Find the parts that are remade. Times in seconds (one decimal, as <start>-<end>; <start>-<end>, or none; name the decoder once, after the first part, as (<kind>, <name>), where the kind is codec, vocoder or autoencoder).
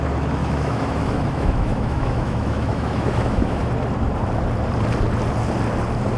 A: 0.4-3.6 (autoencoder, DAC-VAE)